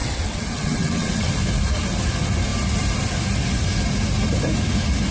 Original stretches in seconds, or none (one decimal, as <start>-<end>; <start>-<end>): 1.3-5.1